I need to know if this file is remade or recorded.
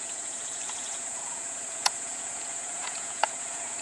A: remade